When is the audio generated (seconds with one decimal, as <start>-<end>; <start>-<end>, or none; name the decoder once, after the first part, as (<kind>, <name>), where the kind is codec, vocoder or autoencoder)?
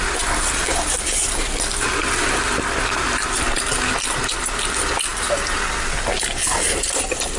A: none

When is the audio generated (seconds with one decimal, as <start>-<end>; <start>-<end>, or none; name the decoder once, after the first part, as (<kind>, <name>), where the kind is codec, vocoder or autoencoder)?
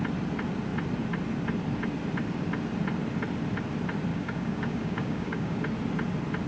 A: 4.1-5.6 (codec, DAC)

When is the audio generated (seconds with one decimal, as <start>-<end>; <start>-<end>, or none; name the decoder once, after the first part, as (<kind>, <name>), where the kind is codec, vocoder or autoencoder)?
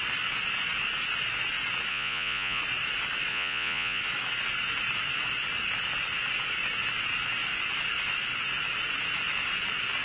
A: 1.9-2.6 (vocoder, Vocos); 3.3-4.0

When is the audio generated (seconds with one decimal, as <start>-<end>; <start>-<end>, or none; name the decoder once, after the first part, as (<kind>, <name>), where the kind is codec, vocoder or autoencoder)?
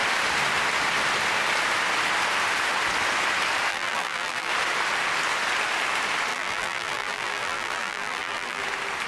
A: 3.7-4.5 (vocoder, BigVGAN v2); 6.3-8.6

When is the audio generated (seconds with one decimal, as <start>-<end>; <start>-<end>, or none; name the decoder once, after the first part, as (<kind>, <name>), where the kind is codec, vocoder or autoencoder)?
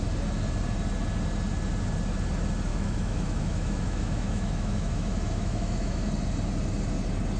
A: 2.7-6.0 (autoencoder, DAC-VAE)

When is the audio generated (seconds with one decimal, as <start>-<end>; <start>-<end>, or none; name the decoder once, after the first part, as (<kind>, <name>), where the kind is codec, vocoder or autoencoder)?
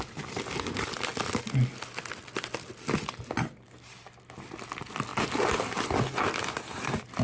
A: none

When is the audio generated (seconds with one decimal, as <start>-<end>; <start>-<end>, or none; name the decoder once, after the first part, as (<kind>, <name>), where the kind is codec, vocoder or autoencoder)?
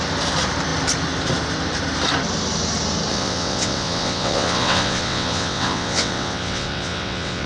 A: 3.1-7.5 (vocoder, WaveNeXt)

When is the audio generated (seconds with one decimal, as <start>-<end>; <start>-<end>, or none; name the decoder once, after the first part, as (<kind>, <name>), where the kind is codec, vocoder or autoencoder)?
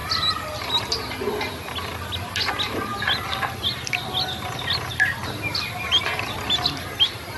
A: none